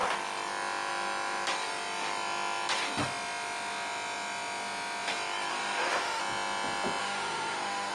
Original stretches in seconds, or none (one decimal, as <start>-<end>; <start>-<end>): 0.0-5.5; 6.2-7.0